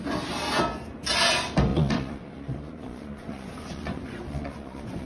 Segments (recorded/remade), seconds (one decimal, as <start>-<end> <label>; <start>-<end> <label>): 0.0-1.7 recorded; 1.7-5.1 remade